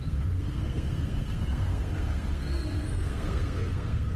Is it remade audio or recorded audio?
remade